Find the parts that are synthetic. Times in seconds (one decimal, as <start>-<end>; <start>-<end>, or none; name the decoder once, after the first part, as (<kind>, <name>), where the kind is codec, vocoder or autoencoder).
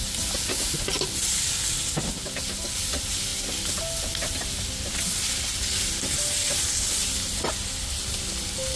none